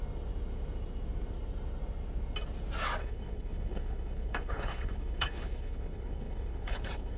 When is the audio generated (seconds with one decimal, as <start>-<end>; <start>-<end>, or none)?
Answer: 3.0-7.2